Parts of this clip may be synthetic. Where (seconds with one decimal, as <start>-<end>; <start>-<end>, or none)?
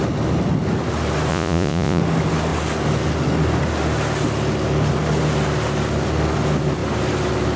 1.3-2.0